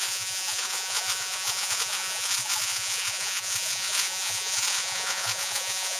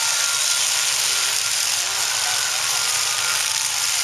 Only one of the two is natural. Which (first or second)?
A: second